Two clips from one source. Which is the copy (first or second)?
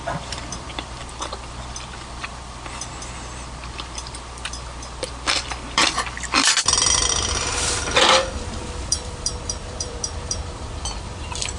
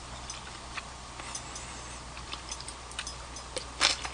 first